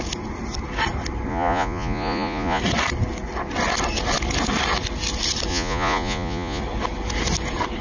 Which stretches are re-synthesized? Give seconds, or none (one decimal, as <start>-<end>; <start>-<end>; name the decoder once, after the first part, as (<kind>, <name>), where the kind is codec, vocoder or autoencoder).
1.3-2.6 (vocoder, Vocos); 5.5-6.6